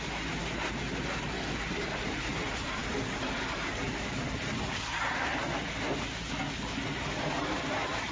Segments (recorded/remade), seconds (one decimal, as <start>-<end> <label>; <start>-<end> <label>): 0.0-0.4 remade; 0.4-1.2 recorded; 1.2-5.5 remade; 5.5-6.8 recorded; 6.8-8.1 remade

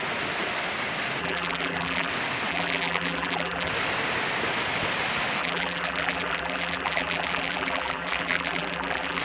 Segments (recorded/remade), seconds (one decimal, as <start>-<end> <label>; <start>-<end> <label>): 0.0-1.2 recorded; 1.2-2.1 remade; 2.1-2.5 recorded; 2.5-3.7 remade; 3.7-5.4 recorded; 5.4-9.2 remade